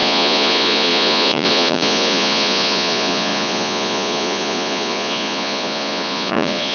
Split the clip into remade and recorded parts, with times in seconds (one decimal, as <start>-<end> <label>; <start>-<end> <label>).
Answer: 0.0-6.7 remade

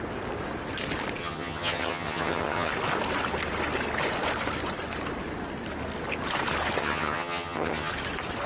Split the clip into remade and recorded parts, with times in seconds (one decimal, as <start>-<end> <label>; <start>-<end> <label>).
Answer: 0.0-1.2 recorded; 1.2-2.7 remade; 2.7-6.8 recorded; 6.8-7.9 remade; 7.9-8.5 recorded

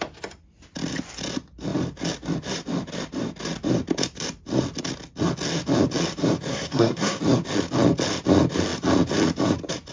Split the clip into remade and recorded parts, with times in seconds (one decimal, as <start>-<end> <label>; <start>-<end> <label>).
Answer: 0.0-6.5 recorded; 6.5-7.2 remade; 7.2-9.9 recorded